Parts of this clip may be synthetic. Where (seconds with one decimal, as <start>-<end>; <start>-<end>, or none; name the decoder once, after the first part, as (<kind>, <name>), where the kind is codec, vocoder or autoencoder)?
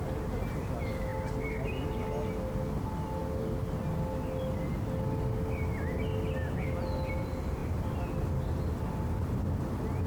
none